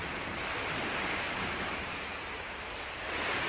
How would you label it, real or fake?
fake